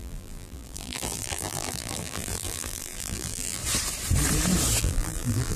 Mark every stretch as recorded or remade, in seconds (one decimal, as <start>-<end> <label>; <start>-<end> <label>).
0.0-3.6 remade; 3.6-4.8 recorded; 4.8-5.6 remade